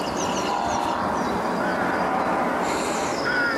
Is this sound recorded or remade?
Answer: recorded